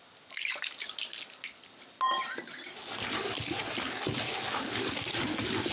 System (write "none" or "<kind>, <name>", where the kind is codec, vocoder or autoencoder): none